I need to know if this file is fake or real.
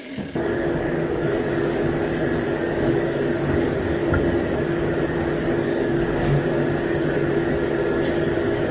fake